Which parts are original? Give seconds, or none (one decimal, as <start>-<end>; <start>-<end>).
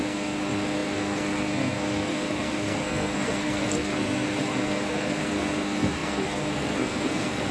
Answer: none